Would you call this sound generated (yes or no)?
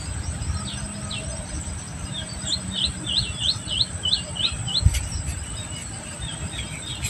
no